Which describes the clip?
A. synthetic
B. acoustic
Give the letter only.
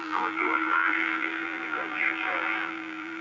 A